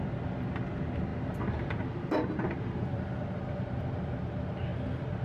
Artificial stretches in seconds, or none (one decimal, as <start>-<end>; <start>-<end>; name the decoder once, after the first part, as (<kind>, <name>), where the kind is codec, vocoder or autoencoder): none